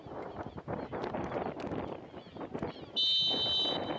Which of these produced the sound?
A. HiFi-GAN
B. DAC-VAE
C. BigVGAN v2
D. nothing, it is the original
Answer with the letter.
D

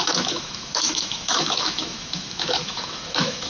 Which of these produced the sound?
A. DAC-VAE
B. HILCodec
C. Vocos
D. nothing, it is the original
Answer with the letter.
A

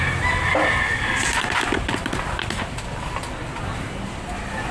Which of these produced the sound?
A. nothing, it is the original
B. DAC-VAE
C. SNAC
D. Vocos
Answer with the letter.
A